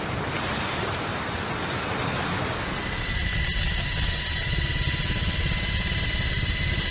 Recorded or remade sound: recorded